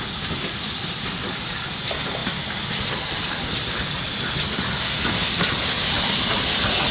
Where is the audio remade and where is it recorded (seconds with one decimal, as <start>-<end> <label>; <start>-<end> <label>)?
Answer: 0.0-6.9 recorded